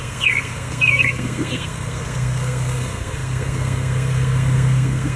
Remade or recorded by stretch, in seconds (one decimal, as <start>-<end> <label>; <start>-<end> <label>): 0.0-5.2 remade